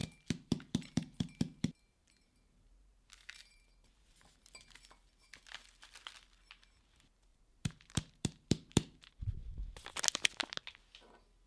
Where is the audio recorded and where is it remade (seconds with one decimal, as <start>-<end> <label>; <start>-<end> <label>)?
0.0-4.7 remade; 4.7-7.3 recorded; 7.3-9.0 remade; 9.0-11.5 recorded